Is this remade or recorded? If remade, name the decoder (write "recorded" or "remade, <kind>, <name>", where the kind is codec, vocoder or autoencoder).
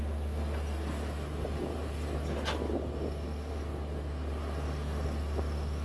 recorded